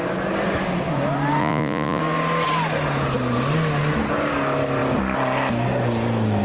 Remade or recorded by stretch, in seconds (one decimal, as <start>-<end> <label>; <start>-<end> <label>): 0.0-1.4 recorded; 1.4-2.0 remade; 2.0-6.4 recorded